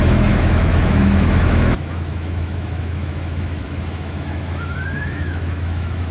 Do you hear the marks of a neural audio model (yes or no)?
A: yes